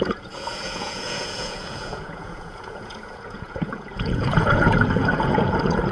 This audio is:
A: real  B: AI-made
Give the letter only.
B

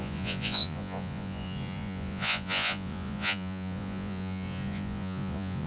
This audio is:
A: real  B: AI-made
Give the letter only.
B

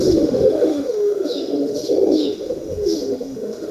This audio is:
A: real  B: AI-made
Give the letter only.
B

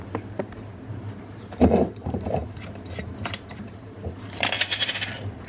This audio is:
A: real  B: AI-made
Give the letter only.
B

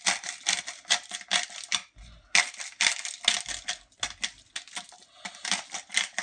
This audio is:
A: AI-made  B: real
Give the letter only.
B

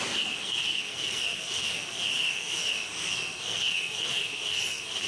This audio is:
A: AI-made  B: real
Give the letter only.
A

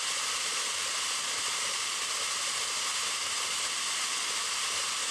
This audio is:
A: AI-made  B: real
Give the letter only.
B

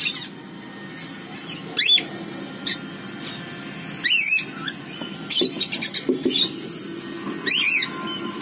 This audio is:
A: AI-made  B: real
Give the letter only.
B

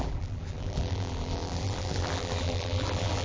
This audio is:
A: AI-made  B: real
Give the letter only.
A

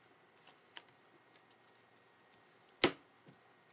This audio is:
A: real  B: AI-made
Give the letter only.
A